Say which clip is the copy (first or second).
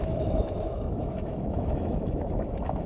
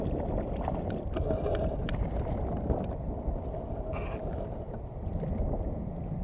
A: first